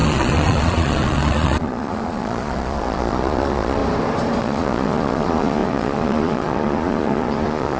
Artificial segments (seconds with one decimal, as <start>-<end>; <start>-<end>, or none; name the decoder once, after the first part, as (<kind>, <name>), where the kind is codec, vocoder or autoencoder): 0.0-3.8 (vocoder, Vocos); 4.4-7.8